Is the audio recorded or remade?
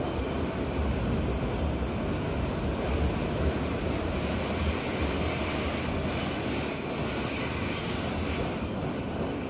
recorded